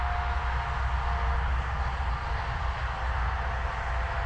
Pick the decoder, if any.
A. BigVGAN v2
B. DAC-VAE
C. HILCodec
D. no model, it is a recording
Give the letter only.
D